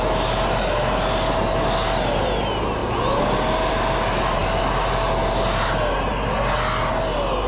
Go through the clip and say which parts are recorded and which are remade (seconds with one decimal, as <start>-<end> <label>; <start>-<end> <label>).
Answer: 0.0-7.5 recorded